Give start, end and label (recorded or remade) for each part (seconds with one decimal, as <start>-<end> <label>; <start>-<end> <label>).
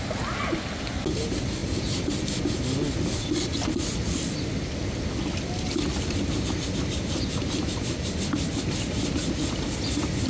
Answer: 0.0-10.3 recorded